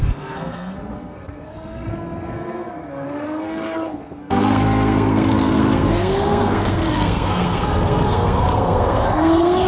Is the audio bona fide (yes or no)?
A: no